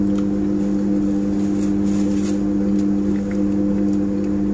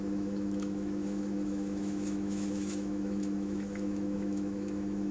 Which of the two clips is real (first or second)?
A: first